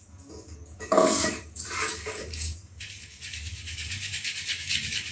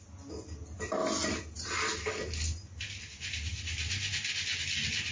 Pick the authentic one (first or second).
second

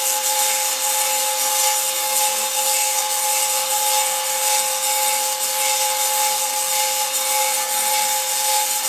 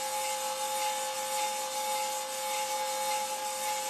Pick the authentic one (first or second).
second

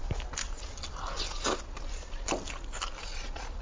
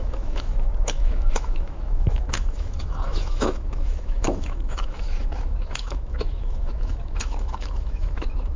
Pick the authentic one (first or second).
first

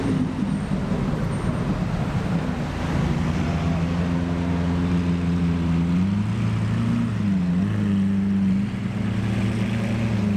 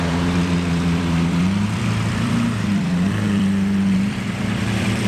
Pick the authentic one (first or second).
first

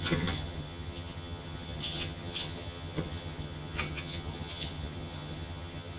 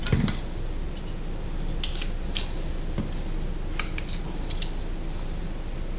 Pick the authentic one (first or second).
second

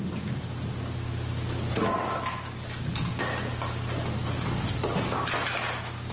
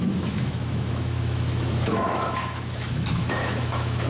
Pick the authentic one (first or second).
first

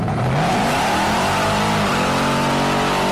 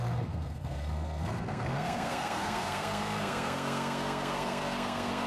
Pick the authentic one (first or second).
first